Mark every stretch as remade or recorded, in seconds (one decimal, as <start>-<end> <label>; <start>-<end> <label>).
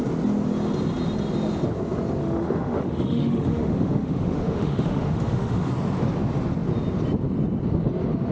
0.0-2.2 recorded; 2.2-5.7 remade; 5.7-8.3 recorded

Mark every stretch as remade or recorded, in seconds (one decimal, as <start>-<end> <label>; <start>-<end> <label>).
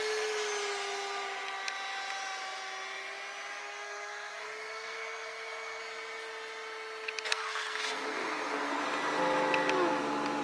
0.0-3.6 recorded; 3.6-5.8 remade; 5.8-7.3 recorded; 7.3-8.8 remade; 8.8-10.4 recorded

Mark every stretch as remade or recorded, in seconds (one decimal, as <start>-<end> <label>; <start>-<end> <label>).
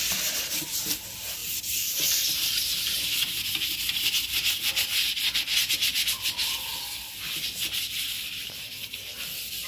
0.0-9.7 remade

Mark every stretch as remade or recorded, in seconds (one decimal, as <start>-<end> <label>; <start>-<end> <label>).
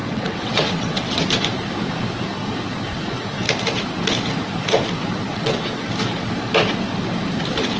0.0-1.2 remade; 1.2-5.3 recorded; 5.3-5.8 remade; 5.8-7.8 recorded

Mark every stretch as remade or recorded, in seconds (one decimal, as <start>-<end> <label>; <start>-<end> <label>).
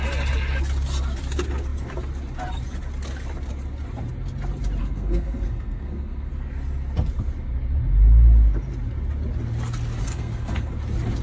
0.0-4.8 recorded; 4.8-6.3 remade; 6.3-10.0 recorded; 10.0-10.7 remade; 10.7-11.2 recorded